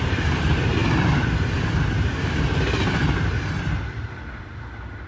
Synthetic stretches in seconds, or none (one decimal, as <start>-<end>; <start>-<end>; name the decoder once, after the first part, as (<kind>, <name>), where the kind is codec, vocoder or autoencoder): none